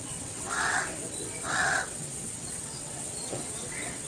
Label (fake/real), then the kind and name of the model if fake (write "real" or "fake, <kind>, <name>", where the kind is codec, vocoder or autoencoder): fake, vocoder, WaveNeXt